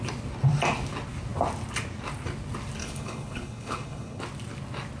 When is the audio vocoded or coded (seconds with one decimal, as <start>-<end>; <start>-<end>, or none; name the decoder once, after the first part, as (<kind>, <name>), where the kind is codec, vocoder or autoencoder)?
2.8-4.2 (codec, HILCodec)